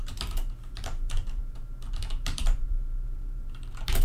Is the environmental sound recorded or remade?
remade